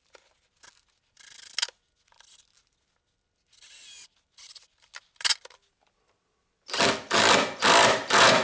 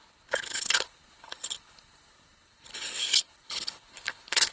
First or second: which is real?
first